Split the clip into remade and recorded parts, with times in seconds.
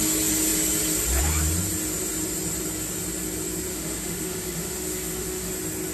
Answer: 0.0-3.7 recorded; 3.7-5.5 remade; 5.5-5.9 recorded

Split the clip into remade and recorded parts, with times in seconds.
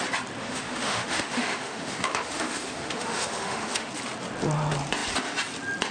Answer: 0.0-0.4 recorded; 0.4-3.9 remade; 3.9-5.9 recorded